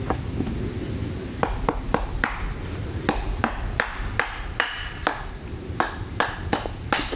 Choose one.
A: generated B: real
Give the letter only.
B